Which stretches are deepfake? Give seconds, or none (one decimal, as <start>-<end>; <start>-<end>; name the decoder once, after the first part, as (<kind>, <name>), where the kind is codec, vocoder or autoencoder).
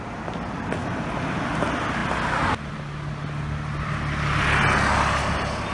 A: none